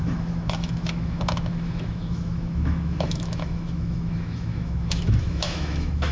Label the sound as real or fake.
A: fake